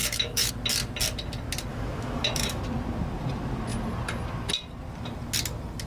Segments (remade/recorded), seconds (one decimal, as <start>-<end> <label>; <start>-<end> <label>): 0.0-0.5 remade; 0.5-1.7 recorded; 1.7-2.6 remade; 2.6-5.9 recorded